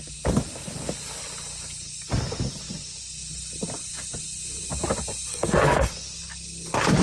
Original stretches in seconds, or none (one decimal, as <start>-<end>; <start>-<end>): 0.0-5.3; 5.9-7.0